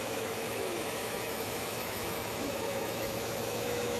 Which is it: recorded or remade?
remade